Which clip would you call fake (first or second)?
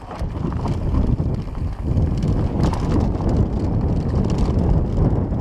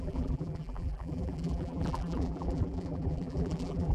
second